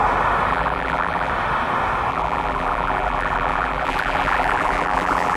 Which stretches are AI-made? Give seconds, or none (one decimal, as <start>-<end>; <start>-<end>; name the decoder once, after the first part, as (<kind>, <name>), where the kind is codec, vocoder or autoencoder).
0.5-1.3 (vocoder, BigVGAN v2); 2.1-5.4